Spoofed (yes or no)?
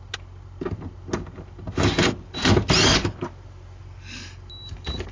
no